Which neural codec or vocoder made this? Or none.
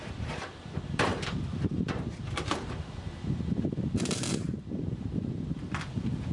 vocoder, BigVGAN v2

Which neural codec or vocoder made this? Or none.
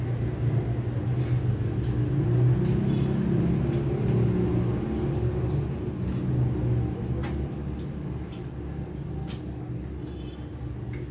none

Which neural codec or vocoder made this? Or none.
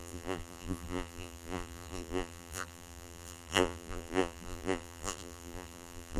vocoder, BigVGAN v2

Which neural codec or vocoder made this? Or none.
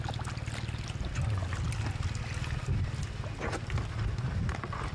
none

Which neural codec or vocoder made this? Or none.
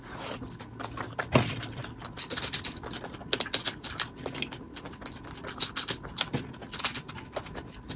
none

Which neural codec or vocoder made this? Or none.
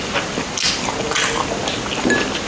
none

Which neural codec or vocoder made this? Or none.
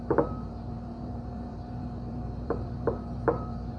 vocoder, BigVGAN v2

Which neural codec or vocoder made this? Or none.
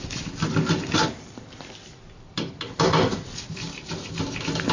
none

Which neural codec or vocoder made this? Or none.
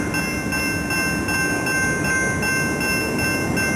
none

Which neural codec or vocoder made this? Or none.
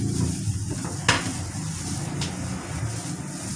none